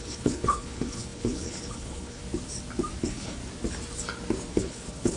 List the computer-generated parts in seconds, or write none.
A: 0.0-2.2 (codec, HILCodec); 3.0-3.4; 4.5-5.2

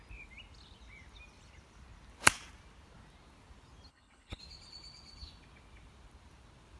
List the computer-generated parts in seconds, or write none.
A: 3.9-4.4 (codec, HILCodec)

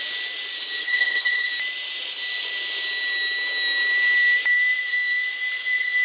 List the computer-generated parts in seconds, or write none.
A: 0.8-1.5 (codec, HILCodec)

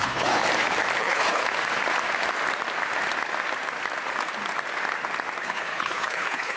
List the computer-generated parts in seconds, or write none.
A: 0.0-0.4 (codec, HILCodec); 1.0-1.4; 5.4-6.6